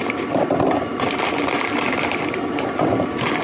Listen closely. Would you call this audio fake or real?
real